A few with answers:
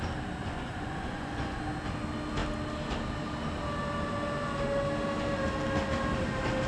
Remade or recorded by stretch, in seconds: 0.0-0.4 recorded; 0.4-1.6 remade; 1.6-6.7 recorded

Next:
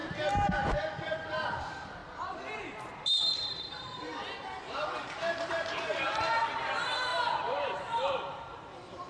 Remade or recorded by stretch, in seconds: 0.0-0.7 recorded; 0.7-2.0 remade; 2.0-2.6 recorded; 2.6-4.1 remade; 4.1-4.8 recorded; 4.8-9.1 remade

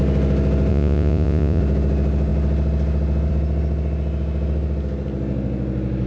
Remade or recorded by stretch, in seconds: 0.0-0.7 recorded; 0.7-1.6 remade; 1.6-6.1 recorded

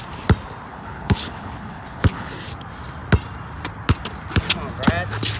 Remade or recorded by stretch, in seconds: 0.0-0.7 recorded; 0.7-2.3 remade; 2.3-5.4 recorded

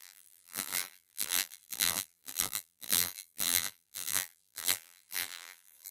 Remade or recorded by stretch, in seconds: 0.0-5.9 remade

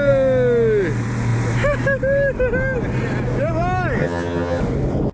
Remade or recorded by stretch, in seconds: 0.0-4.0 recorded; 4.0-4.6 remade; 4.6-5.1 recorded

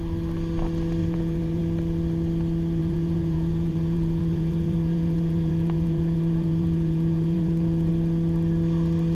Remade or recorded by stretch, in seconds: 0.0-1.0 recorded; 1.0-1.6 remade; 1.6-2.8 recorded; 2.8-7.9 remade; 7.9-9.1 recorded